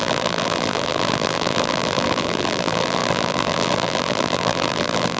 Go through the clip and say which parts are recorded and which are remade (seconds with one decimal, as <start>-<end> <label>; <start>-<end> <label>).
0.0-5.2 remade